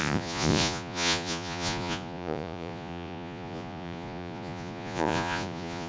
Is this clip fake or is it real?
fake